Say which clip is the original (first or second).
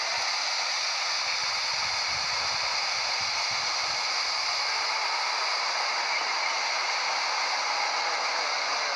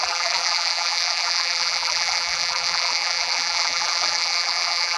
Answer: first